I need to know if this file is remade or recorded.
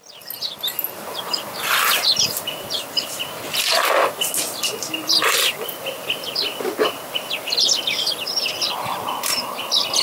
recorded